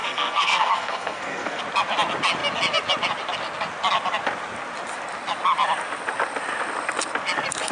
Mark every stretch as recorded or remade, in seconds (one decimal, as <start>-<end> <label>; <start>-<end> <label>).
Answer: 0.0-1.6 remade; 1.6-7.7 recorded